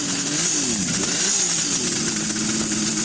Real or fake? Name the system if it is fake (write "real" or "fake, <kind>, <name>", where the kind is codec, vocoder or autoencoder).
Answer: real